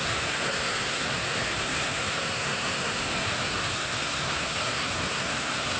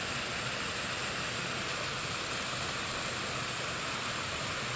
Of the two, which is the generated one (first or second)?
first